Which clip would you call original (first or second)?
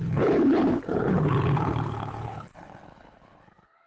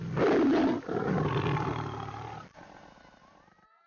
second